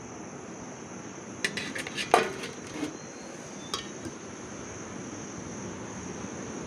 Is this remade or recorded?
recorded